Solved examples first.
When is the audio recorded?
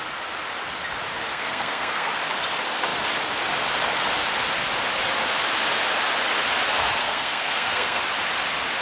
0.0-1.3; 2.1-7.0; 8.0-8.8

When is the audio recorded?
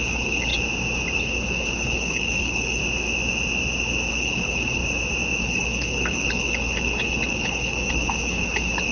0.5-1.2; 2.8-4.1; 4.8-5.4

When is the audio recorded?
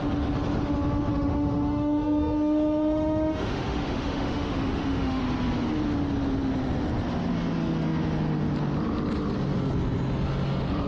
0.0-1.1; 5.2-10.9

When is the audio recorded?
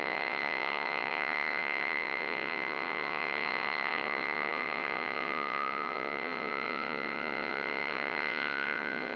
none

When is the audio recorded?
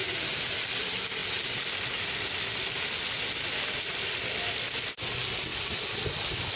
0.0-6.6